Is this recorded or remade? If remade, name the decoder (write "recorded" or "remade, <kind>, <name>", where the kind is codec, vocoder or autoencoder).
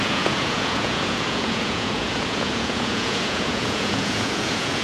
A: remade, vocoder, Vocos